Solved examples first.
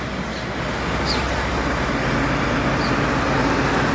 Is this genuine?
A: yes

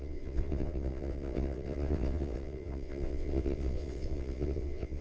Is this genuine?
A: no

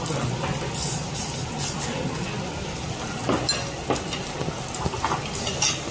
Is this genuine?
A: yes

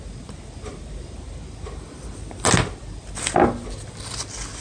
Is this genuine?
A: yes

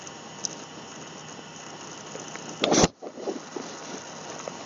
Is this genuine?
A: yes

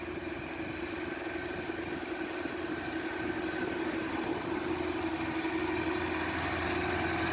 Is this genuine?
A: yes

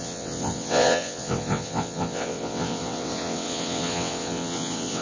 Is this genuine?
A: no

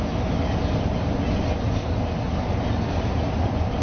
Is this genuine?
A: yes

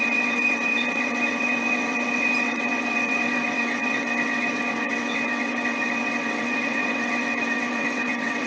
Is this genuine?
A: no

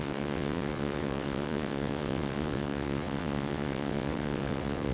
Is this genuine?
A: no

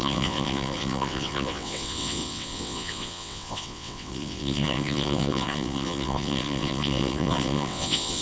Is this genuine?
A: no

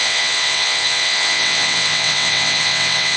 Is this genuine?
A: no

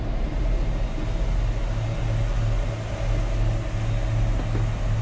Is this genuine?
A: yes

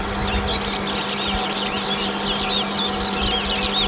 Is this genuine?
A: yes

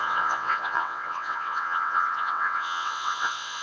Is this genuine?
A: no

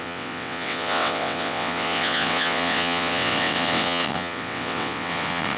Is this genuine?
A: no